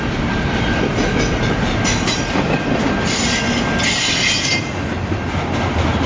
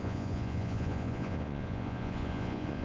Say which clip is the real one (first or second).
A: first